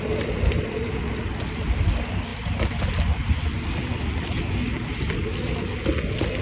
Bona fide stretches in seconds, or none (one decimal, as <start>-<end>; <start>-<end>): 0.0-6.4